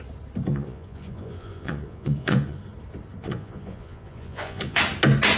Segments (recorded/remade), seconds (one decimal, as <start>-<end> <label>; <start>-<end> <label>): 0.0-0.5 recorded; 0.5-2.6 remade; 2.6-3.2 recorded; 3.2-4.8 remade; 4.8-5.4 recorded